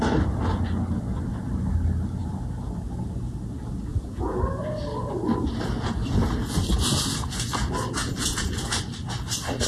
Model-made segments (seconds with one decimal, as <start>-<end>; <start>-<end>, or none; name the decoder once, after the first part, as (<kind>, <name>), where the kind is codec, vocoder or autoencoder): 3.9-4.4 (vocoder, Vocos); 8.0-8.8